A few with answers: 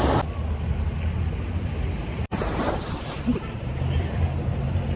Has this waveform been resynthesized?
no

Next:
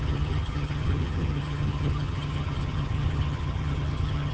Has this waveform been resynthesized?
yes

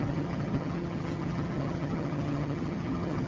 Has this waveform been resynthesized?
yes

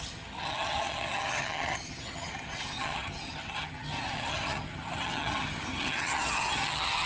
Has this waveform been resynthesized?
yes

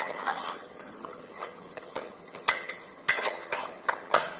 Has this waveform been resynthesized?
yes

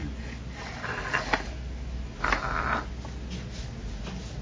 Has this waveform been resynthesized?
no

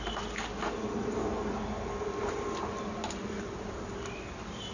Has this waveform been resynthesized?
no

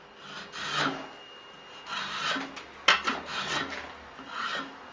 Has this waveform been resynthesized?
no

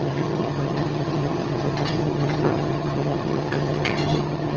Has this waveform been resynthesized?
yes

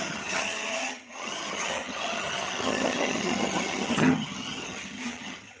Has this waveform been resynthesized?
yes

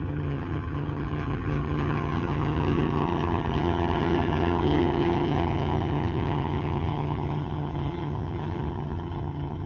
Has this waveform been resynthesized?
yes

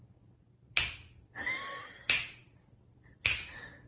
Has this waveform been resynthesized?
no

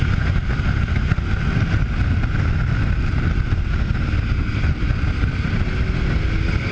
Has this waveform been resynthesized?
no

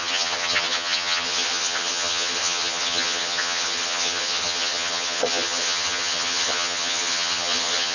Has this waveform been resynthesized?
yes